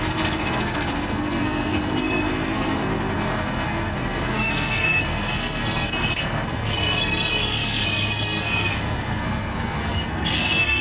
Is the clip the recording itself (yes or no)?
no